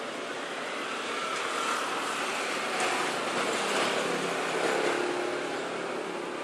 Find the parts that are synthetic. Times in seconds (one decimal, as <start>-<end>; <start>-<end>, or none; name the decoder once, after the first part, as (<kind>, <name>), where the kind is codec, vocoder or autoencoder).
none

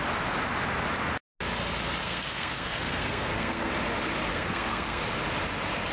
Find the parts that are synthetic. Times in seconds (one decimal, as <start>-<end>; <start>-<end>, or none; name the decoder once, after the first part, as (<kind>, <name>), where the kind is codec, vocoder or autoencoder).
2.0-3.7 (codec, SNAC); 4.3-5.0

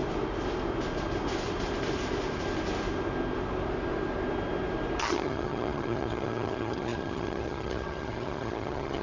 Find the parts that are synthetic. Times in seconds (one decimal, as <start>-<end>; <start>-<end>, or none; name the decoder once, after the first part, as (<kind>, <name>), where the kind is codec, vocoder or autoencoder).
5.0-9.0 (vocoder, HiFi-GAN)

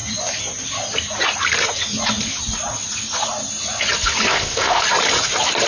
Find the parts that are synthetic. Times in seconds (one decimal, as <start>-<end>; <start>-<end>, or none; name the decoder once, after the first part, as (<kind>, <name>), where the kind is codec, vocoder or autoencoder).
4.3-4.8 (codec, ZipCodec)

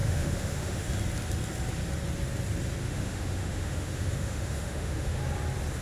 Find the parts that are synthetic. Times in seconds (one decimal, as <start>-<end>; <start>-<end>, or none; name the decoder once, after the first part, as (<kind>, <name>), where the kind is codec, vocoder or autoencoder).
0.0-0.9 (autoencoder, DAC-VAE); 2.8-5.2

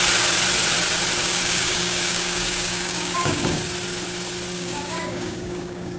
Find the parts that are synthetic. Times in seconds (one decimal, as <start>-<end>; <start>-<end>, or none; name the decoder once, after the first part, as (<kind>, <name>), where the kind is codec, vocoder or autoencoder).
1.2-3.6 (codec, DAC); 4.5-6.0

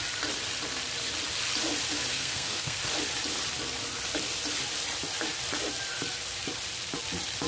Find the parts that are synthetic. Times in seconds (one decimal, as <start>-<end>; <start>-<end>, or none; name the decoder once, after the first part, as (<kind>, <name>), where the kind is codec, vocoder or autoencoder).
2.1-2.8 (codec, SNAC)